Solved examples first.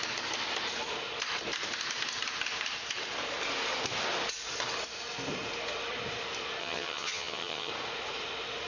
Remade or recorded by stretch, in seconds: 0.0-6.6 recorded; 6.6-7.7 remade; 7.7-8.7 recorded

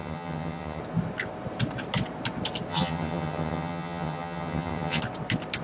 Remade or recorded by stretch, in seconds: 0.0-0.8 remade; 0.8-2.7 recorded; 2.7-5.0 remade; 5.0-5.6 recorded

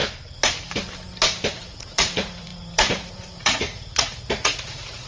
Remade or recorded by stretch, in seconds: 0.0-1.5 recorded; 1.5-5.1 remade